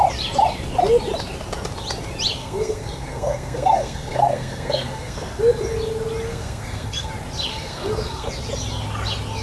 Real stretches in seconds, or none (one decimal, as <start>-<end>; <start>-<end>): 0.0-2.4; 5.4-6.3; 7.1-7.5; 8.3-9.4

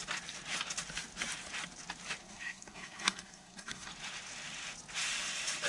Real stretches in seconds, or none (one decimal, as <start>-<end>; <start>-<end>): 0.0-2.2; 3.9-5.7

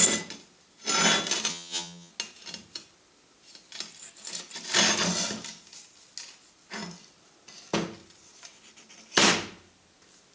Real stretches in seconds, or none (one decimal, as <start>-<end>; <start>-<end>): 0.0-1.5; 2.1-10.3